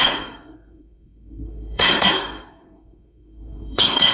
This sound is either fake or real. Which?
fake